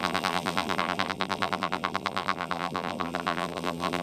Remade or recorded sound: remade